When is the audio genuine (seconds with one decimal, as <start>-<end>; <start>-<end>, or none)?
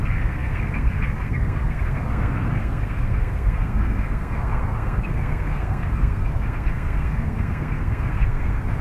none